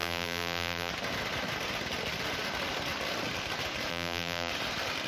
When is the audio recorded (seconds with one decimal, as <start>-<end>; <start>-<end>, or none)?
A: 0.9-3.9; 4.5-5.1